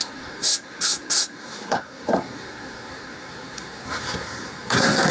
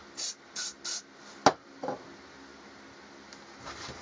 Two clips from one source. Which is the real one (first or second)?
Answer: second